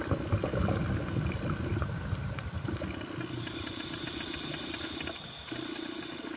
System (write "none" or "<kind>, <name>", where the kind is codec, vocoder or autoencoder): none